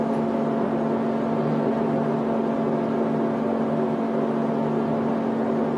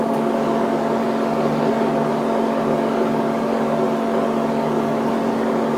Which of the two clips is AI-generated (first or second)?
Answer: second